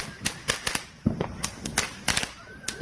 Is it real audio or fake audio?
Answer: real